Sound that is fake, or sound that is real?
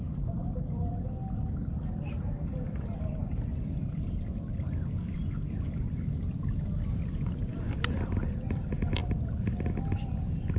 real